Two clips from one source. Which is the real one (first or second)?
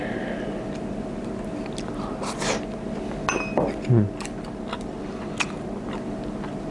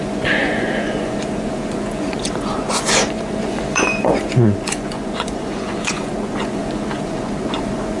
first